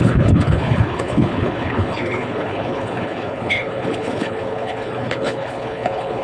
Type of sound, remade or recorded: remade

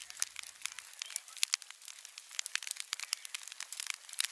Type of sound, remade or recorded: recorded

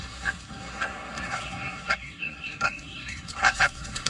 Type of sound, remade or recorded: remade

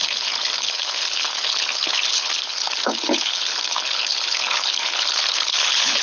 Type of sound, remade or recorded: remade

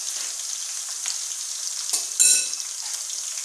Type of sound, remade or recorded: recorded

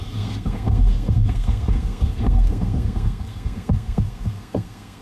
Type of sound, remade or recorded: remade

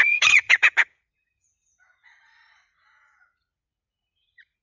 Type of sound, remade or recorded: remade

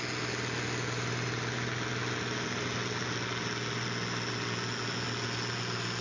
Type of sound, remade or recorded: recorded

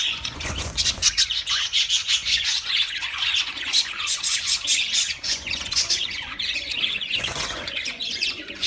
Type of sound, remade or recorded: remade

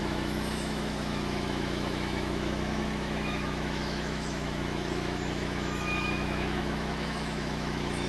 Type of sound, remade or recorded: remade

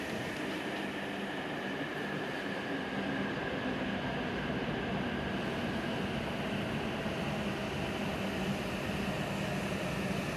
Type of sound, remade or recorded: recorded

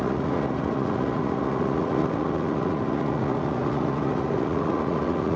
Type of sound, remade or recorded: remade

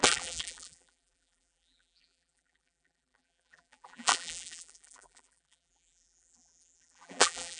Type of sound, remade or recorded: remade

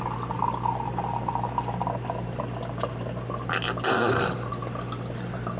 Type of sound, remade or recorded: recorded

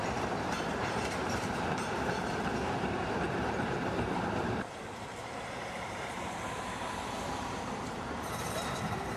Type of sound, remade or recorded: remade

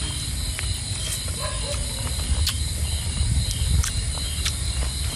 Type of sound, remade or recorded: recorded